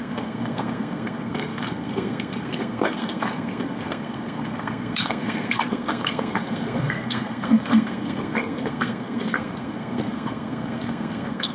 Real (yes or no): no